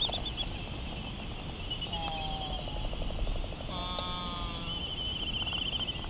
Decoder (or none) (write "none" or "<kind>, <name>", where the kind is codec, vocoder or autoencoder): none